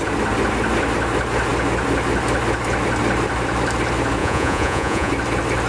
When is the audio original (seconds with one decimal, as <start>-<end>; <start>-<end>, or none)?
0.0-4.2; 5.1-5.7